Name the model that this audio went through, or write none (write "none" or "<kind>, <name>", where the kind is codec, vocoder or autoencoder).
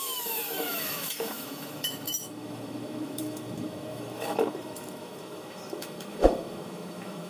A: autoencoder, DAC-VAE